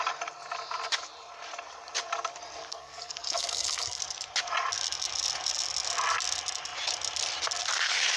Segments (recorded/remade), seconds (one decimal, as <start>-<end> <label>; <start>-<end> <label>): 0.0-2.7 recorded; 2.7-4.0 remade; 4.0-8.2 recorded